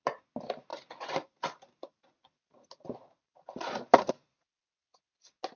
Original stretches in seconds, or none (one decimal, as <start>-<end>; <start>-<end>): 0.0-0.7; 4.1-5.6